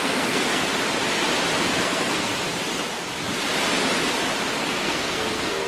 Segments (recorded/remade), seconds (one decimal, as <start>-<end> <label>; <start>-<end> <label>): 0.0-0.7 remade; 0.7-1.8 recorded; 1.8-2.3 remade; 2.3-4.6 recorded; 4.6-5.7 remade